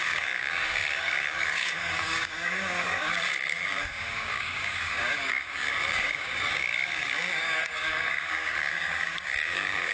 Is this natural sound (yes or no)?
no